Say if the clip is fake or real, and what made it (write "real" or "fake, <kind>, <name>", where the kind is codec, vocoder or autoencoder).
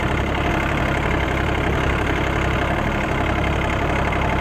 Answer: real